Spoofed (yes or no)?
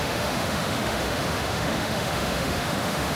yes